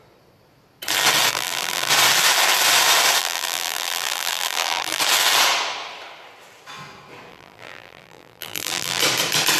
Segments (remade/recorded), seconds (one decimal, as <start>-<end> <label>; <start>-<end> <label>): 0.0-1.3 recorded; 1.3-1.9 remade; 1.9-3.2 recorded; 3.2-5.0 remade; 5.0-7.3 recorded; 7.3-9.0 remade; 9.0-9.6 recorded